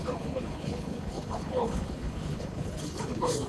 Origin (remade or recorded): remade